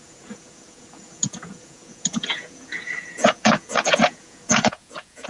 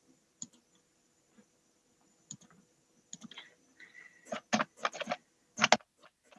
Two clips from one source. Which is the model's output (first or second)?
first